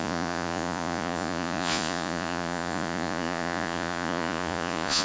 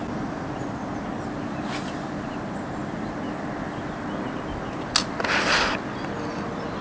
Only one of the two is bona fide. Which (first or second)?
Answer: second